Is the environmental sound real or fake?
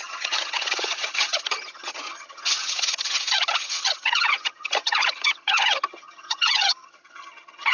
fake